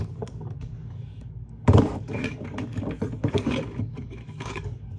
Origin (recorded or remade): remade